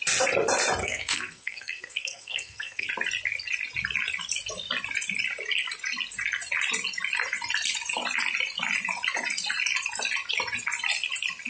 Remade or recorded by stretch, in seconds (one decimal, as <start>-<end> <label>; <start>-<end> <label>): 0.0-0.8 recorded; 0.8-2.9 remade; 2.9-11.5 recorded